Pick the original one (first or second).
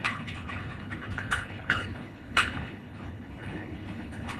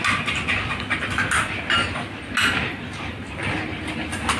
second